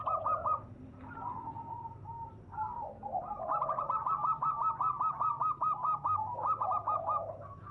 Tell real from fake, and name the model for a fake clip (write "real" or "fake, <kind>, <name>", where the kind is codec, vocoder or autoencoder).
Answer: fake, vocoder, BigVGAN v2